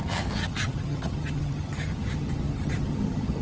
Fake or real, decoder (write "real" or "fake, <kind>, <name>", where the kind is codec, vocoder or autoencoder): fake, vocoder, HiFi-GAN